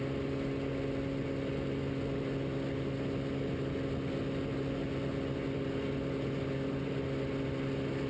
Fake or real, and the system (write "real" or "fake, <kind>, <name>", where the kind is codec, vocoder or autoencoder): real